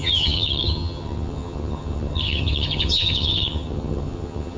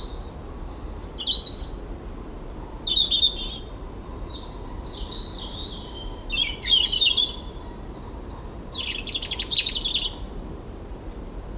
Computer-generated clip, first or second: first